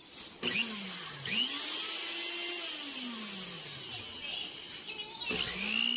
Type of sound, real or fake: real